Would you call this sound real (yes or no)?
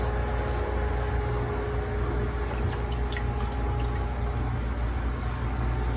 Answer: yes